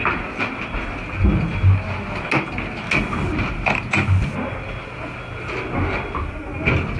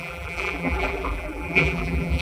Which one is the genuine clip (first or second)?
first